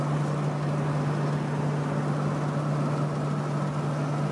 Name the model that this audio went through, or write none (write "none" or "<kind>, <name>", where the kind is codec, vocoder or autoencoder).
none